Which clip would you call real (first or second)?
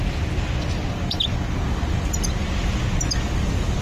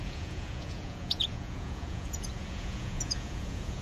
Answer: first